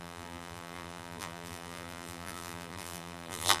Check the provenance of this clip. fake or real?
fake